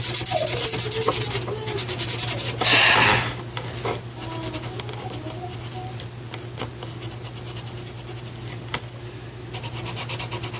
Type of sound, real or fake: real